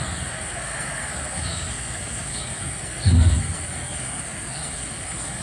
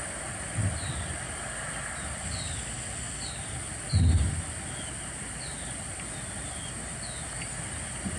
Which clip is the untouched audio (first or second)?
second